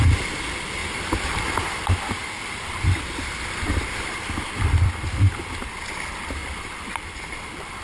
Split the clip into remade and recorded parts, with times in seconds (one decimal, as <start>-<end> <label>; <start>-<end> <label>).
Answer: 0.0-0.8 recorded; 0.8-1.4 remade; 1.4-2.2 recorded; 2.2-4.6 remade; 4.6-6.4 recorded; 6.4-7.8 remade